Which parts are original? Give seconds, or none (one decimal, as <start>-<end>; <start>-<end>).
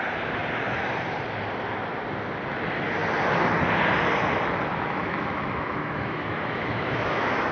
0.0-4.7